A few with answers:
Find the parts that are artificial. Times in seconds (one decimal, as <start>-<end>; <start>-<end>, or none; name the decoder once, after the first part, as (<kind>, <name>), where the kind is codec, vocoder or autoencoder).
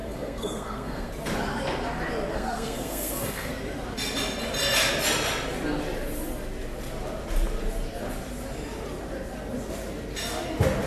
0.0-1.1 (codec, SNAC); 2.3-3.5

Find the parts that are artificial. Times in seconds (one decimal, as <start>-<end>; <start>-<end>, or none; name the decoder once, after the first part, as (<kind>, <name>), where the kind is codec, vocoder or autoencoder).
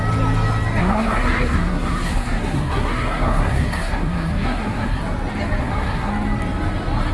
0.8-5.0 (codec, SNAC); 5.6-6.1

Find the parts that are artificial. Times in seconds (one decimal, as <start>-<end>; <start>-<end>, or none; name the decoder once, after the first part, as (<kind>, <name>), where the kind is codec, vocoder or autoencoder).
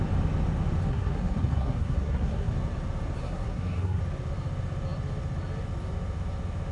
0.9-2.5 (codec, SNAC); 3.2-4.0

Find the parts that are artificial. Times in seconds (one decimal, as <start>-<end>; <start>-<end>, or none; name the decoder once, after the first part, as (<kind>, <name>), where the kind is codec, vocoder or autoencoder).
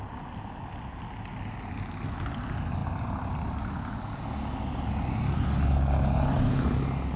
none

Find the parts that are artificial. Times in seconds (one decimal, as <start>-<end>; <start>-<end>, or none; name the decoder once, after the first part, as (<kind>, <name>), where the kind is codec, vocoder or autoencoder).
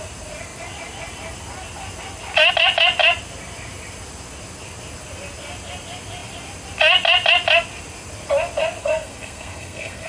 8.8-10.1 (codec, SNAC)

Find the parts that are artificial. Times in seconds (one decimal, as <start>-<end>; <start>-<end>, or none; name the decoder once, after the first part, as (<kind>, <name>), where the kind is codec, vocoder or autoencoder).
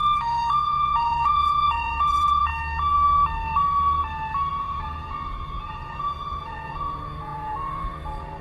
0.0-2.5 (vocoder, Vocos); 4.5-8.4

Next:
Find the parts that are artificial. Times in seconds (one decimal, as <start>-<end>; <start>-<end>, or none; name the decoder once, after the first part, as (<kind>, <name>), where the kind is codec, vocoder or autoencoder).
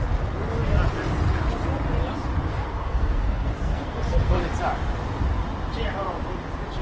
2.5-4.4 (codec, SNAC)